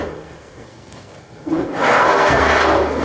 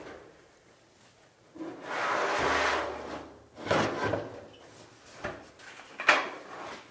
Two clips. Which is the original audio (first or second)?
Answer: second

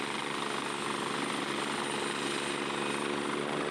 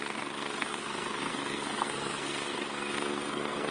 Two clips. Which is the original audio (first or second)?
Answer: first